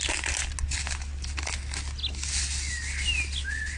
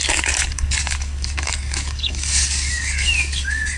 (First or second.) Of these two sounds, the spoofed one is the second